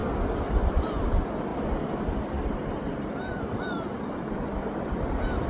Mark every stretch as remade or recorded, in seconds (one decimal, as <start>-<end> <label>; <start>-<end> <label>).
0.0-5.5 remade